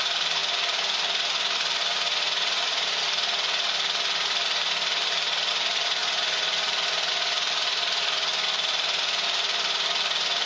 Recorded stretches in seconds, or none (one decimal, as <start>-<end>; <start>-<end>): 0.0-10.5